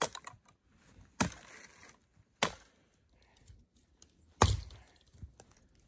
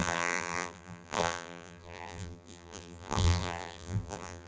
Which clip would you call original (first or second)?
first